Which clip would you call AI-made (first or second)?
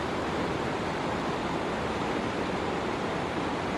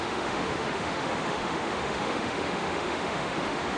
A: second